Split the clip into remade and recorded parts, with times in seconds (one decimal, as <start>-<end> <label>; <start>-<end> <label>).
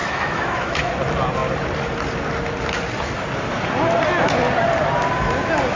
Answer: 0.0-0.9 remade; 0.9-5.8 recorded